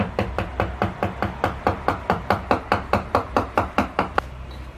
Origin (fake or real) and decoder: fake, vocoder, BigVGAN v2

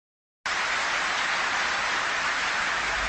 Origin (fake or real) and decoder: real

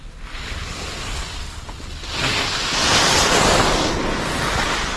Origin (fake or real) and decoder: real